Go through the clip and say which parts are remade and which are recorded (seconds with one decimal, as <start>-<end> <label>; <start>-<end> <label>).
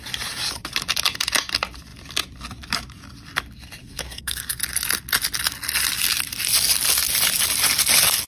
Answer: 0.0-3.8 recorded; 3.8-4.6 remade; 4.6-8.3 recorded